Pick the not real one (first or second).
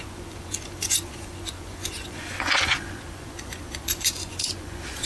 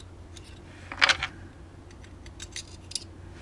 first